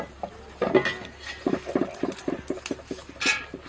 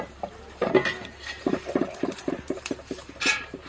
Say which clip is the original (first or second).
first